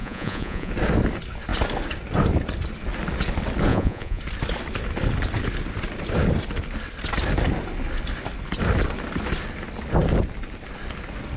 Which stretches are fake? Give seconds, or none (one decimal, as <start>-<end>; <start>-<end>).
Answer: 0.0-0.7; 3.7-4.2